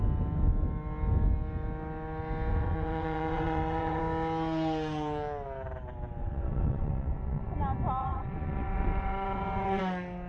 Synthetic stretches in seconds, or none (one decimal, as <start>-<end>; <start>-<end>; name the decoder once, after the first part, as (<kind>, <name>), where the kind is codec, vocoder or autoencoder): 2.5-4.0 (vocoder, WaveNeXt); 6.2-7.5; 8.0-9.8